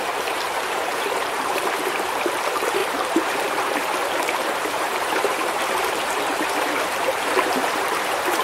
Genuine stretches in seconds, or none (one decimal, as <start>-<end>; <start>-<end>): none